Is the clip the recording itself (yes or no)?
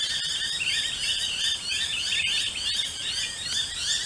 yes